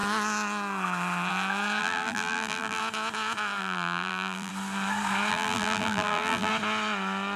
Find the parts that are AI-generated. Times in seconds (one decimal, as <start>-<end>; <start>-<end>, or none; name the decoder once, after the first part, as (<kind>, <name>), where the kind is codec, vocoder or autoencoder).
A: 1.8-2.8 (vocoder, BigVGAN v2); 3.6-4.5; 5.3-6.5

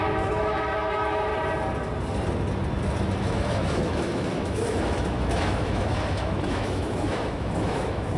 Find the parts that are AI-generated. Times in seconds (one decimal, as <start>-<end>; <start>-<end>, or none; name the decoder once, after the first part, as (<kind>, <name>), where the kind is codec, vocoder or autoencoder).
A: 0.0-1.3 (autoencoder, DAC-VAE); 3.2-8.2

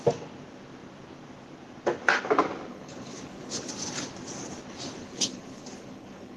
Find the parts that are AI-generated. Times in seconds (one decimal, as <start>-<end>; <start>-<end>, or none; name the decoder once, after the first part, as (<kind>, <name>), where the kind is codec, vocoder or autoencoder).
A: 2.7-3.7 (codec, HILCodec); 5.0-6.4

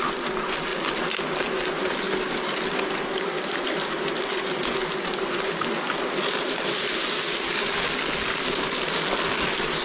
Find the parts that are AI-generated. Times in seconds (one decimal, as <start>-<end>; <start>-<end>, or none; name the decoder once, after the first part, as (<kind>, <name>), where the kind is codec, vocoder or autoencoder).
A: none

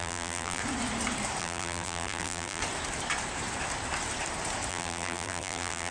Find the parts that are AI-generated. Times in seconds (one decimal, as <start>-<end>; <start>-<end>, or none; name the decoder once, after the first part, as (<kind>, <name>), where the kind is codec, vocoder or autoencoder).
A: 0.0-0.6 (vocoder, BigVGAN v2); 1.4-2.6; 4.7-5.9